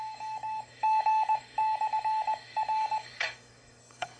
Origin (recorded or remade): remade